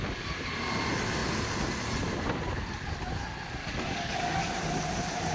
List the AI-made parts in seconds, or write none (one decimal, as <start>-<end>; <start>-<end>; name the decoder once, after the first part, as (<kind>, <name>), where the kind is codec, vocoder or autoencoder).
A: 3.6-4.4 (codec, DAC)